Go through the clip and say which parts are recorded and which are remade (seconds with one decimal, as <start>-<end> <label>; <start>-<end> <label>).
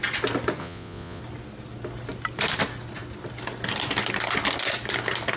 0.0-0.6 recorded; 0.6-1.2 remade; 1.2-5.4 recorded